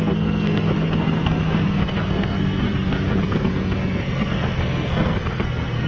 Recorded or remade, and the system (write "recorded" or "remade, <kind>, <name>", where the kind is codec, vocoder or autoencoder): remade, codec, SNAC